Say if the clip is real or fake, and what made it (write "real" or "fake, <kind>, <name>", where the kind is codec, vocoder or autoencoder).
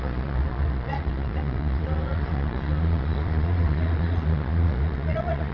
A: fake, vocoder, Vocos